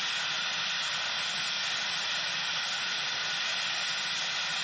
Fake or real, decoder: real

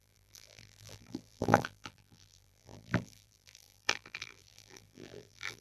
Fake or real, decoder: fake, vocoder, BigVGAN v2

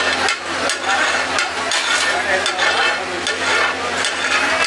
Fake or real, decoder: real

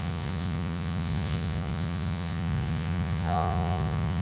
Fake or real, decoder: fake, vocoder, Vocos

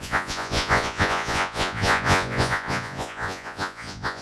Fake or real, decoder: fake, vocoder, Vocos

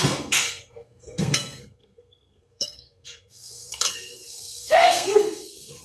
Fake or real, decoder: fake, codec, SNAC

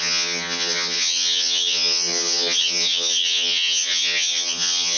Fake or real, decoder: fake, vocoder, HiFi-GAN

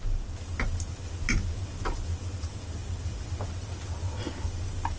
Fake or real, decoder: real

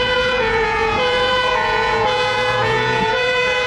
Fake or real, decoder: fake, vocoder, Vocos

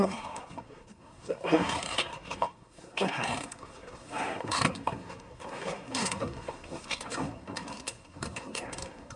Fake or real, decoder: fake, codec, SNAC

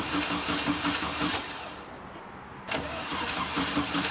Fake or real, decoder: fake, vocoder, BigVGAN v2